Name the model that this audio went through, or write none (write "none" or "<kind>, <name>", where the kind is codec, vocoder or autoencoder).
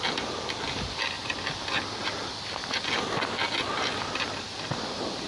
none